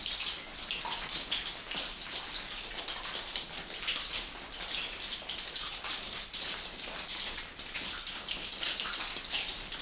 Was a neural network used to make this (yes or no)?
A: no